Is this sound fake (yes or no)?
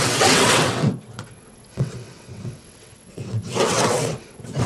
yes